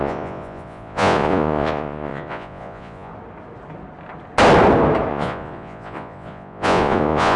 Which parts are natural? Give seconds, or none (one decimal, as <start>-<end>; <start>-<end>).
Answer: 3.1-5.1